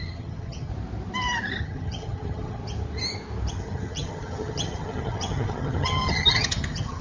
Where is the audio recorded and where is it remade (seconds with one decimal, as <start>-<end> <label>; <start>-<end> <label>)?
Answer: 0.0-0.7 remade; 0.7-1.6 recorded; 1.6-2.6 remade; 2.6-3.5 recorded; 3.5-7.0 remade

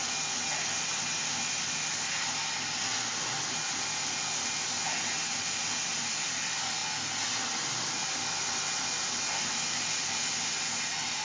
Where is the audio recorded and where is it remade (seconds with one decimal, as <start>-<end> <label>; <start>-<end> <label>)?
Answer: 0.0-11.2 recorded

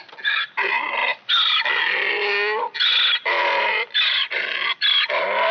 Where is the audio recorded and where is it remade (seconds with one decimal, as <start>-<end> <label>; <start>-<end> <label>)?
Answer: 0.0-5.5 recorded